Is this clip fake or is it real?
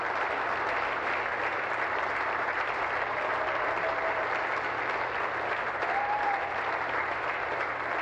real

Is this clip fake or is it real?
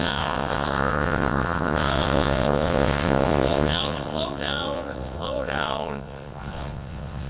fake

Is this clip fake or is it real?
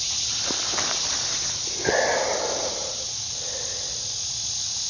real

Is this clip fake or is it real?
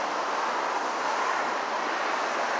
real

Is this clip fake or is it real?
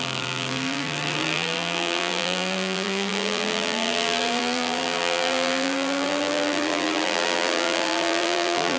fake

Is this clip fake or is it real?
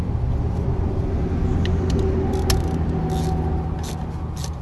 real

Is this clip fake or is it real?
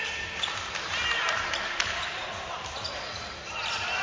real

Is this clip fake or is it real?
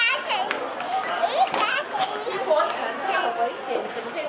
real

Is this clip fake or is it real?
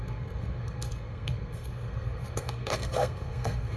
fake